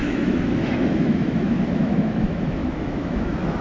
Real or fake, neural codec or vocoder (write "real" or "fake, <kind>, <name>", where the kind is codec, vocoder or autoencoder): fake, autoencoder, DAC-VAE